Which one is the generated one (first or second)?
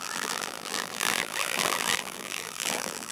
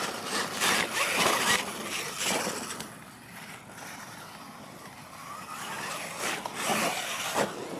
first